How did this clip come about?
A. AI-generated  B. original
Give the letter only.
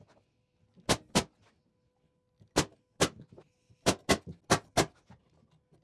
B